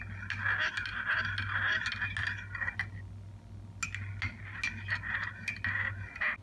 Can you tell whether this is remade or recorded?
recorded